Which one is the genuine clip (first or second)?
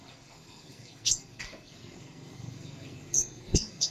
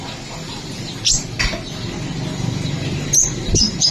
second